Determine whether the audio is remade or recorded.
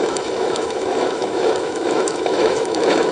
remade